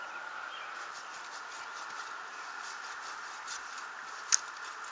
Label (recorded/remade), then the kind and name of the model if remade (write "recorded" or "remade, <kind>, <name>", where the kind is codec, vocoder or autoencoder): recorded